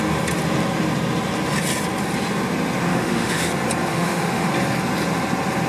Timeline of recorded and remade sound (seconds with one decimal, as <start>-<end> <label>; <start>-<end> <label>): 0.0-2.9 recorded; 2.9-3.5 remade; 3.5-3.9 recorded; 3.9-4.5 remade; 4.5-5.7 recorded